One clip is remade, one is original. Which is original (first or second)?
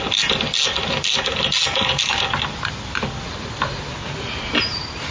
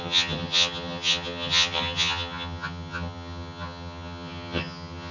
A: first